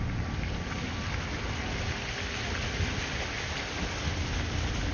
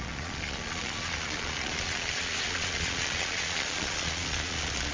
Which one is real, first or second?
first